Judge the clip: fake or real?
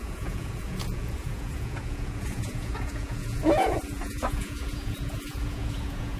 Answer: fake